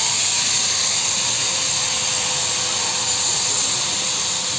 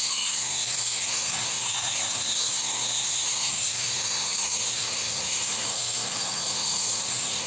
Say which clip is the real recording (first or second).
first